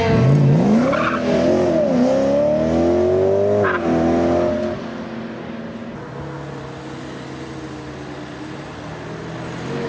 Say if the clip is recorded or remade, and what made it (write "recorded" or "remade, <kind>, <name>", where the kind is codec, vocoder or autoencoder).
recorded